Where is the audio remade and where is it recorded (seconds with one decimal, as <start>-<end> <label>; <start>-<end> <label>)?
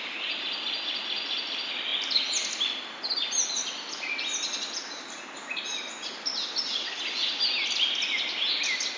0.0-9.0 recorded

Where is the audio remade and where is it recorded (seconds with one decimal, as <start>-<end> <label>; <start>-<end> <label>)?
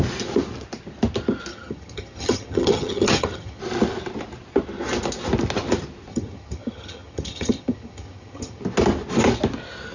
0.0-1.5 recorded; 1.5-3.6 remade; 3.6-6.1 recorded; 6.1-8.6 remade; 8.6-9.9 recorded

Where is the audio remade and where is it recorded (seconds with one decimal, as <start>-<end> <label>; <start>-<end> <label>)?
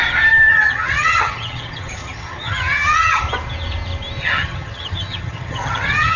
0.0-0.5 recorded; 0.5-3.2 remade; 3.2-4.2 recorded; 4.2-6.2 remade